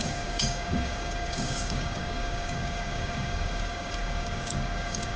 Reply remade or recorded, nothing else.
remade